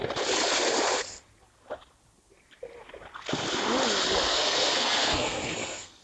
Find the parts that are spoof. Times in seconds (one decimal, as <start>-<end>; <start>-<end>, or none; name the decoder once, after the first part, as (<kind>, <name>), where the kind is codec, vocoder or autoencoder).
4.3-6.0 (codec, SNAC)